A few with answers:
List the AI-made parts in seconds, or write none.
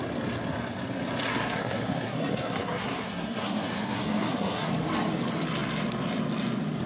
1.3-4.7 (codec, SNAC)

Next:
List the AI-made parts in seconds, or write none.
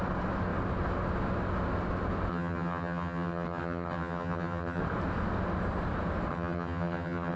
2.3-4.8 (vocoder, HiFi-GAN); 6.3-7.4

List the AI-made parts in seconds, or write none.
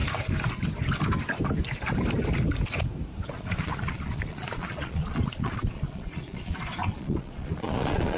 3.3-8.2 (vocoder, Vocos)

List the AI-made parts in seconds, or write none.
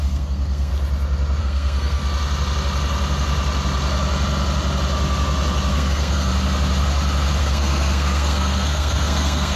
0.0-0.7 (codec, SNAC); 1.4-2.0; 5.7-6.3; 7.4-9.6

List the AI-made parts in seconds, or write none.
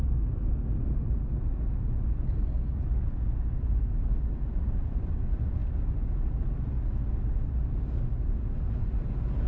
none